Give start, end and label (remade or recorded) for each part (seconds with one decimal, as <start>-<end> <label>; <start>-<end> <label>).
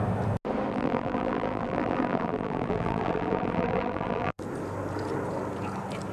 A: 0.0-0.7 recorded; 0.7-4.4 remade; 4.4-6.1 recorded